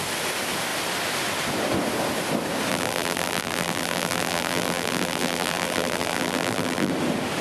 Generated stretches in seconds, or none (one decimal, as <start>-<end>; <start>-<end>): 2.7-6.9